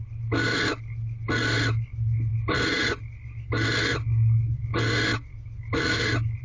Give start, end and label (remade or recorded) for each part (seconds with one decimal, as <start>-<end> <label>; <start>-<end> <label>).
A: 0.0-6.4 recorded